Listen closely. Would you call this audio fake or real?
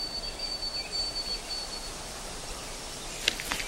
fake